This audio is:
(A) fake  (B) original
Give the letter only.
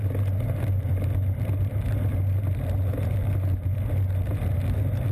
B